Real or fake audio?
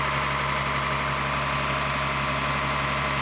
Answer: real